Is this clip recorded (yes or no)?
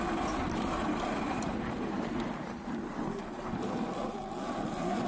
yes